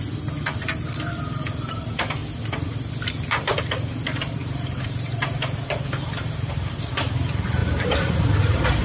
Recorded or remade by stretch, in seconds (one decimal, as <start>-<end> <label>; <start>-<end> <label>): 0.0-4.4 recorded; 4.4-6.9 remade; 6.9-7.6 recorded; 7.6-8.8 remade

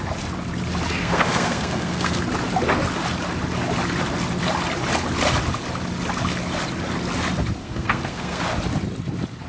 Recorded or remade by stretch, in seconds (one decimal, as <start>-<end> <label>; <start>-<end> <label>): 0.0-1.0 recorded; 1.0-2.2 remade; 2.2-7.6 recorded; 7.6-8.4 remade; 8.4-9.5 recorded

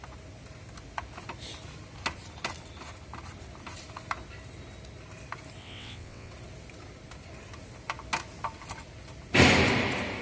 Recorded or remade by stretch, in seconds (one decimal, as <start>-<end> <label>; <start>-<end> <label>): 0.0-5.6 recorded; 5.6-6.3 remade; 6.3-10.2 recorded

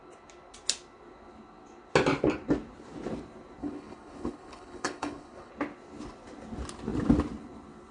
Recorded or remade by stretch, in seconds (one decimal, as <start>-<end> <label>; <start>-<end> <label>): 0.0-3.6 recorded; 3.6-5.5 remade; 5.5-7.9 recorded

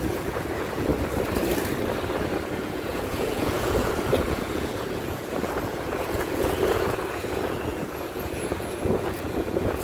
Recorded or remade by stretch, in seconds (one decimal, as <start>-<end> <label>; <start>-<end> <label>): 0.0-0.9 remade; 0.9-2.5 recorded; 2.5-9.8 remade